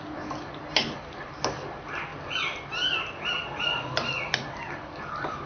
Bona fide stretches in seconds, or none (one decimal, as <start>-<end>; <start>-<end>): 0.0-5.5